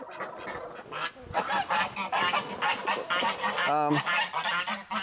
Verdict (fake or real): real